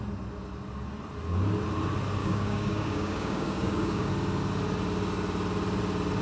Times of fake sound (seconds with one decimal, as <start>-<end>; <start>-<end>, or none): 2.2-4.1